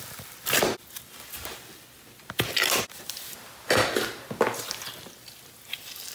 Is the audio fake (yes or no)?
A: no